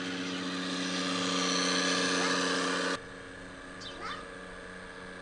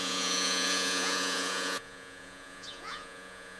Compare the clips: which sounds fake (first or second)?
second